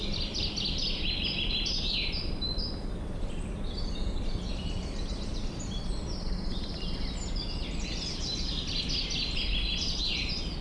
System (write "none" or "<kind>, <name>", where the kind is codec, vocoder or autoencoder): none